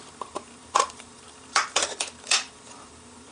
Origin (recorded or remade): remade